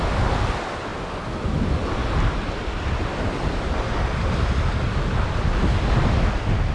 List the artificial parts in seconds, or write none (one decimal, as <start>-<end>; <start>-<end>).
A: none